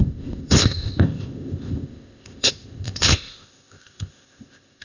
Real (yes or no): no